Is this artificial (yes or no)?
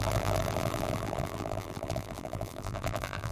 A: yes